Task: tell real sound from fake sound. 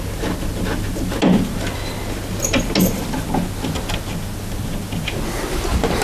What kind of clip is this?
real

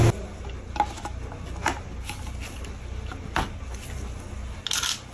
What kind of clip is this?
real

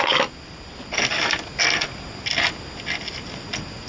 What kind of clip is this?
real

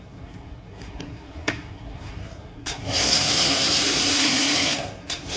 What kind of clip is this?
fake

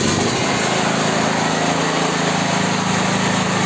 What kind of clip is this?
real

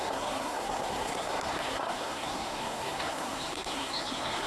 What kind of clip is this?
fake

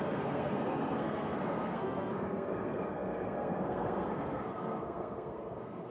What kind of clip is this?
fake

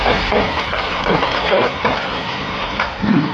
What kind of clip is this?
fake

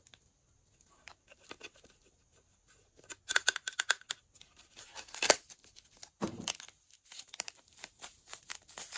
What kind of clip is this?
real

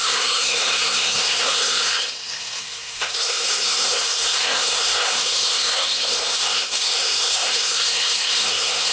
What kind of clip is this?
fake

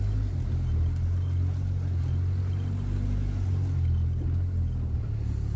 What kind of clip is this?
real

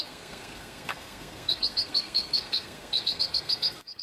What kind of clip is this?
fake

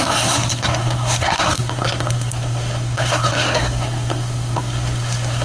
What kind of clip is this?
fake